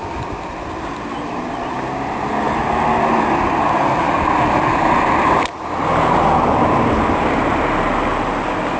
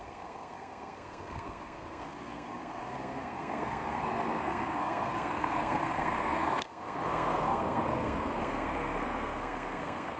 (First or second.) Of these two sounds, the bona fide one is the first